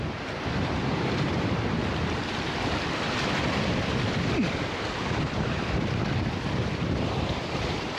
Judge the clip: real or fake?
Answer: fake